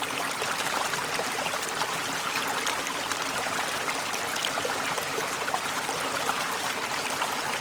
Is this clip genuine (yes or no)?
no